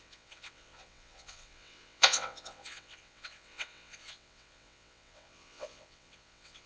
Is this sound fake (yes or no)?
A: yes